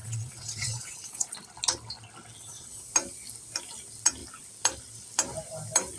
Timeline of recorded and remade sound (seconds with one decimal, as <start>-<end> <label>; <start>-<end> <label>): 0.0-1.3 remade; 1.3-2.4 recorded; 2.4-2.9 remade; 2.9-6.0 recorded